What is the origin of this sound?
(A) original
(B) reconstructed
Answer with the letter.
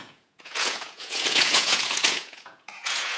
B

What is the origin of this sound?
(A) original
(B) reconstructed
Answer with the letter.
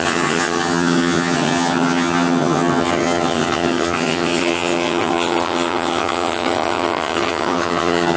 B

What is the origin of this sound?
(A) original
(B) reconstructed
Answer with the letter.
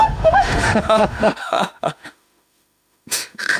B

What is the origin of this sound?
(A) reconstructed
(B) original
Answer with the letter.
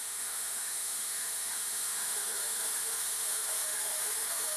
A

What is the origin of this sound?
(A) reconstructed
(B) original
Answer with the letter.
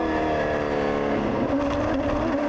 B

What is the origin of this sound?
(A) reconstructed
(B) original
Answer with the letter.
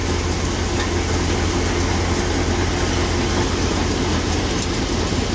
B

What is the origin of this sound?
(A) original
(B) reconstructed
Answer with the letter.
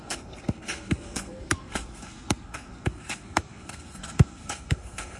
B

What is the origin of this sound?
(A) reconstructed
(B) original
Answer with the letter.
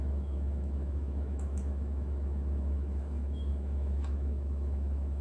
A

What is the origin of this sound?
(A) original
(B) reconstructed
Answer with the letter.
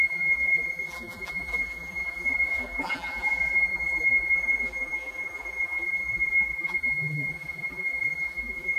B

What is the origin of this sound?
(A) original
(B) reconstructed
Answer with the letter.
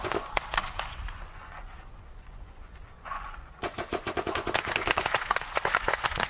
B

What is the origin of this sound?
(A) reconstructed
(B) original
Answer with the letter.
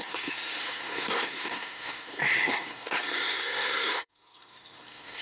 A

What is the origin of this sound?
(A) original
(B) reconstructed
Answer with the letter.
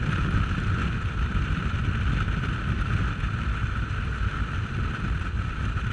B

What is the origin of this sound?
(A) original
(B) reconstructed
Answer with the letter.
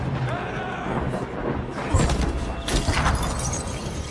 A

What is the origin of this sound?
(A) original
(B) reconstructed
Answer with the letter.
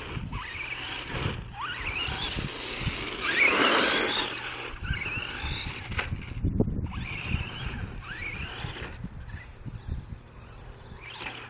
A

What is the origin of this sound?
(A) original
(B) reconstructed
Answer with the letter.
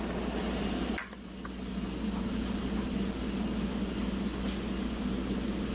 A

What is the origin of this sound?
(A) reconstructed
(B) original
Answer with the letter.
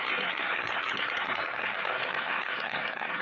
A